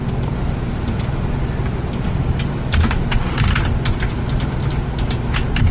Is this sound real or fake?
real